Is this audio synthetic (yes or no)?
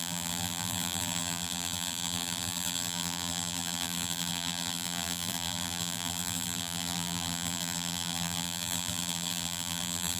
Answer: yes